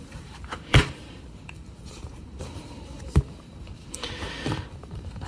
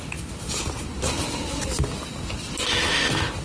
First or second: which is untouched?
second